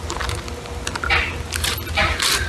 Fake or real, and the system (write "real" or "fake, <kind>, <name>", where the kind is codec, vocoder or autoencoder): real